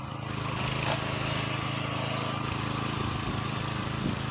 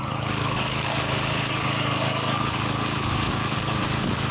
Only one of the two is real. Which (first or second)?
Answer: first